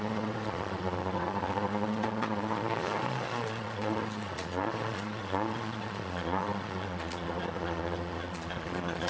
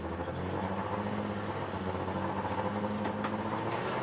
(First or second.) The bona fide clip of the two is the second